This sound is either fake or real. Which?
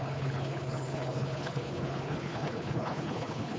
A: fake